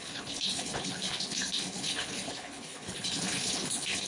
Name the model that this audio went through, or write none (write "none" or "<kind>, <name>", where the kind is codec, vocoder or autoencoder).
codec, HILCodec